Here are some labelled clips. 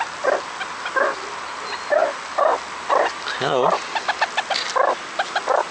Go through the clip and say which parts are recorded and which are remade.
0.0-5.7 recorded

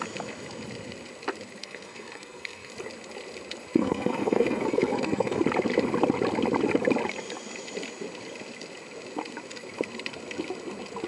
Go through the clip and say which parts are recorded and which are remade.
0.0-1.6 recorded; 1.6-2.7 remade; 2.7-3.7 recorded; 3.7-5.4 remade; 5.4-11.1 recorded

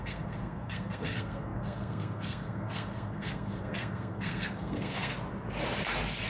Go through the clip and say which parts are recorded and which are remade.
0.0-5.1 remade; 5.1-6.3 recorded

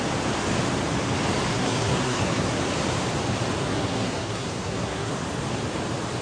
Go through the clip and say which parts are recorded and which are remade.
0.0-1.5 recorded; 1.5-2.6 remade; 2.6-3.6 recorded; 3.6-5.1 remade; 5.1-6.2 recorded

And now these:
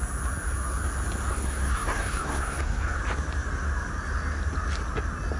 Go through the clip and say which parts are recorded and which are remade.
0.0-1.3 recorded; 1.3-3.0 remade; 3.0-5.4 recorded